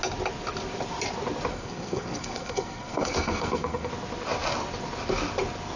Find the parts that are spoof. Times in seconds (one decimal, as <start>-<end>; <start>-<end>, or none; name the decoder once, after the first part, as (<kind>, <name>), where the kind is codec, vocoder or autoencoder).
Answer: 1.5-3.9 (codec, SNAC)